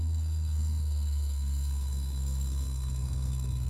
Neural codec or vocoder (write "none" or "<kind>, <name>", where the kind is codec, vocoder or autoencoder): codec, SNAC